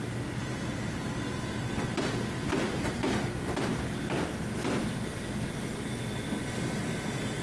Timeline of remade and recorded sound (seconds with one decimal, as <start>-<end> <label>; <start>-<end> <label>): 0.0-7.4 recorded